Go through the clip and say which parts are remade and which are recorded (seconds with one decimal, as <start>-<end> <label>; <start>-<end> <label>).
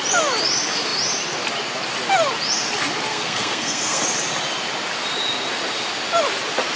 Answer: 0.0-3.1 recorded; 3.1-4.0 remade; 4.0-6.8 recorded